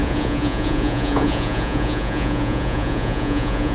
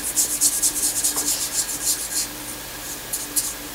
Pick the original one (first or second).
second